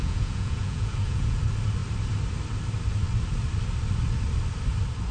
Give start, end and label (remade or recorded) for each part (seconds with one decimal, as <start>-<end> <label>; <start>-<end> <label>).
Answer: 0.0-1.4 remade; 1.4-5.1 recorded